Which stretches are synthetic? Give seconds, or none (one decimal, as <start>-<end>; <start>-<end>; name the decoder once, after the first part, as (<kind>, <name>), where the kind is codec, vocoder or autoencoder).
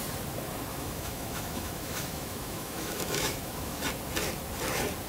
0.7-3.8 (autoencoder, DAC-VAE)